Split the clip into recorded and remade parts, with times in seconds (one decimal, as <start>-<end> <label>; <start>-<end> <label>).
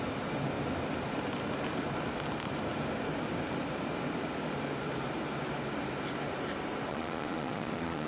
0.0-6.9 recorded; 6.9-8.1 remade